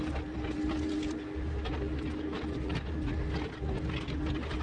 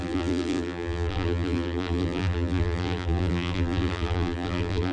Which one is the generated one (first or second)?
second